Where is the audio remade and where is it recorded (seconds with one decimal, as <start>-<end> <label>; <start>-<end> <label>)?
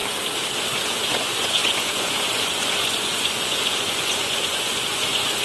0.0-0.6 recorded; 0.6-5.4 remade